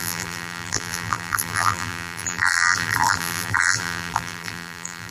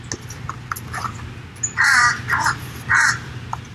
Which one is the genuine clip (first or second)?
second